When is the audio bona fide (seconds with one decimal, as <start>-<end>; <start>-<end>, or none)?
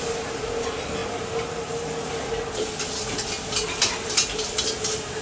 0.0-5.2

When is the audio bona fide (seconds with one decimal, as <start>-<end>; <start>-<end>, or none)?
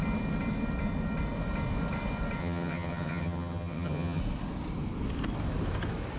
0.0-2.4; 4.2-6.2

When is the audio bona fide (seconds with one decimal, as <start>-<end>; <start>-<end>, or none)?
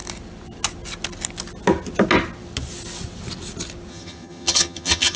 0.0-3.9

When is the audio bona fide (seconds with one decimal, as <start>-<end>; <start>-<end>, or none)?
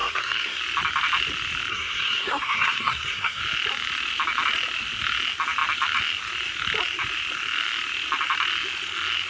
0.6-1.7; 3.4-9.3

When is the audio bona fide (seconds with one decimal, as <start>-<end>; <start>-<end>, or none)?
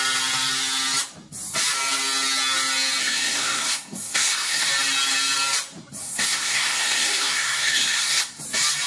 0.0-3.0; 4.7-6.0; 8.4-8.9